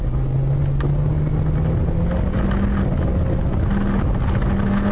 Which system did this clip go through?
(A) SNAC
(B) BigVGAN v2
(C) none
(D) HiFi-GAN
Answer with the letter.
C